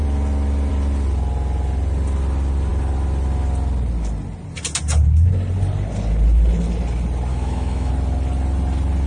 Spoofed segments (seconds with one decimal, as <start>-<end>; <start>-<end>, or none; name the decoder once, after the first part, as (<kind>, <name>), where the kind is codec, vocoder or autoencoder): 7.3-7.9 (autoencoder, DAC-VAE)